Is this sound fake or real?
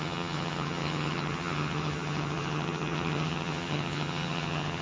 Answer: fake